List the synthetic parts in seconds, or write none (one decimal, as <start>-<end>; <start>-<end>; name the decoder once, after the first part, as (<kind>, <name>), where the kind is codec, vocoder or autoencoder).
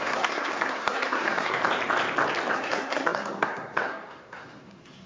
0.0-1.6 (codec, SNAC); 2.5-5.1